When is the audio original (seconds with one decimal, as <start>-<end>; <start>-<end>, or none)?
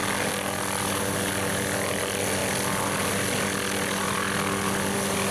0.0-5.3